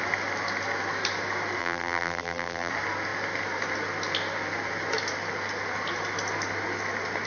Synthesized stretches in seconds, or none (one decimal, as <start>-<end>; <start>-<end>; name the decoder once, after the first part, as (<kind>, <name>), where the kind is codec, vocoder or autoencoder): 1.6-2.7 (vocoder, BigVGAN v2)